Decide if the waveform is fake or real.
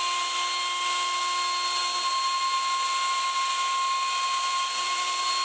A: real